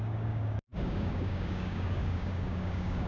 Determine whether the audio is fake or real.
fake